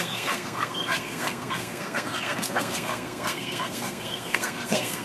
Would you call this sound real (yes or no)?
no